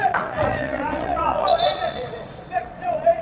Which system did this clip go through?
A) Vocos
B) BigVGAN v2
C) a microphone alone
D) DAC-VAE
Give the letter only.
A